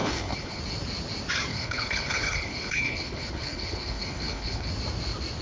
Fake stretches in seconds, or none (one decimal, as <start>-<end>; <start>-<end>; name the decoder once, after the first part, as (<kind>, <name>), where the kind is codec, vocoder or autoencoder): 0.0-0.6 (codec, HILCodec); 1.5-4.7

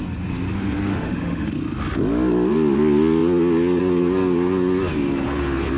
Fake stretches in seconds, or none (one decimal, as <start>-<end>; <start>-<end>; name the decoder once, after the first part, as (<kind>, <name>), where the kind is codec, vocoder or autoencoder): 0.9-1.5 (autoencoder, DAC-VAE)

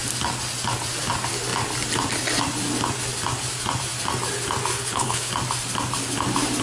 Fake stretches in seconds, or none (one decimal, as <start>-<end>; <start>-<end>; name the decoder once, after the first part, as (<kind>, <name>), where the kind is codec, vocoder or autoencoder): 4.7-5.3 (codec, HILCodec)

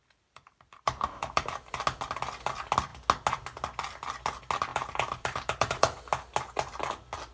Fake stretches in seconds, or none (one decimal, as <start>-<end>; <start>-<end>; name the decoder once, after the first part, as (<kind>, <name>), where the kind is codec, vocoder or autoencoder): 0.0-1.8 (vocoder, BigVGAN v2); 4.7-6.0